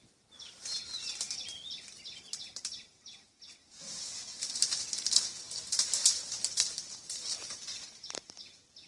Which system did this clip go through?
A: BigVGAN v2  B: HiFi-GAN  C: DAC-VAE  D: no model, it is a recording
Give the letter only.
D